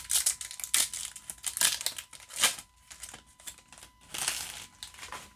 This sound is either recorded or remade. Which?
recorded